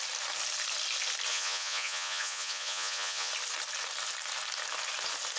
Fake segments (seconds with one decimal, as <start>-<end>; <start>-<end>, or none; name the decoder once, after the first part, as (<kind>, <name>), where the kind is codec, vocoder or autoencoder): 1.3-3.3 (vocoder, Vocos)